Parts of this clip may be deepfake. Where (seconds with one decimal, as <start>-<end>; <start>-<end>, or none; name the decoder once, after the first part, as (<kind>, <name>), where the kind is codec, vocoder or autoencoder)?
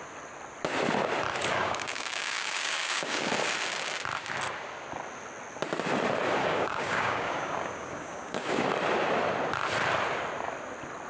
1.5-3.3 (codec, DAC); 6.4-8.7